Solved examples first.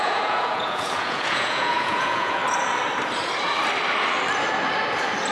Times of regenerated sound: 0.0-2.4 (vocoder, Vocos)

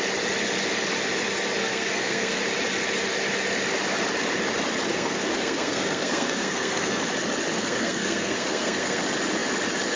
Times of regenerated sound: 1.6-2.4 (codec, SNAC); 4.9-7.0; 7.5-9.0

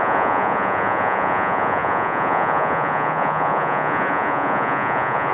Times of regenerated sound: 0.0-5.3 (vocoder, Vocos)

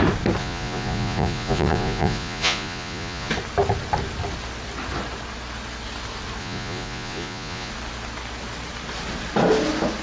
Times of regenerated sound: 0.4-3.3 (vocoder, Vocos); 6.4-7.7

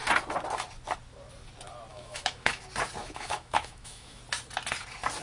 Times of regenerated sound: 1.9-2.6 (autoencoder, DAC-VAE); 3.0-4.2

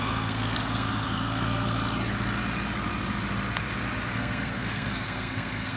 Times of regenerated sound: 0.0-1.8 (codec, SNAC); 4.1-5.8